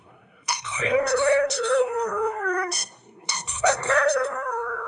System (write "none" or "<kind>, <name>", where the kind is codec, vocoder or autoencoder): codec, SNAC